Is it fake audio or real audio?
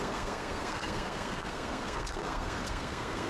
fake